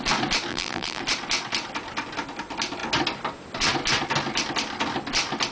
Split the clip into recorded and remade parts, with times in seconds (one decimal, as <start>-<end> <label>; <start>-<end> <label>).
0.0-0.5 recorded; 0.5-1.0 remade; 1.0-5.5 recorded